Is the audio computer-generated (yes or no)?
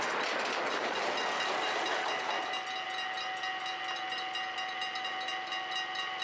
no